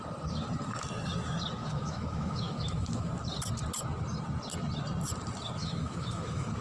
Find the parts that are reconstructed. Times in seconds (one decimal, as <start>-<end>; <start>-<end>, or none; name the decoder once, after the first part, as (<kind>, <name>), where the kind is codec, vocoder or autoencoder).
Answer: 1.6-3.1 (autoencoder, DAC-VAE); 5.6-6.6